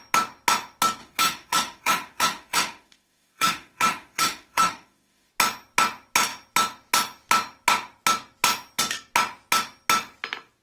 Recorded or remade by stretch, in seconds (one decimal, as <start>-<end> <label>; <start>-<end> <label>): 0.0-1.0 recorded; 1.0-5.3 remade; 5.3-10.6 recorded